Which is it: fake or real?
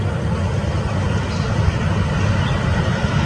real